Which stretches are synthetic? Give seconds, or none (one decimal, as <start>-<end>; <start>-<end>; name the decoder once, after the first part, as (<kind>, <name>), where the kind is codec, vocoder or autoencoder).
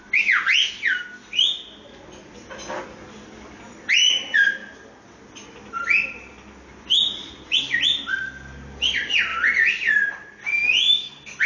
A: none